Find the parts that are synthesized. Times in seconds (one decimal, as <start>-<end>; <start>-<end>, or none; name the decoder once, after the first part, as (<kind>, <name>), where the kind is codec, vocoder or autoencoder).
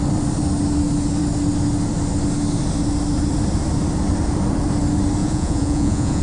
5.2-6.2 (vocoder, Vocos)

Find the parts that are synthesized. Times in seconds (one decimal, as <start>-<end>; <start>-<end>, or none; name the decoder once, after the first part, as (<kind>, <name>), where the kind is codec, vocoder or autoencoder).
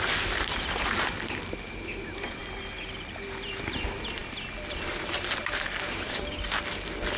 none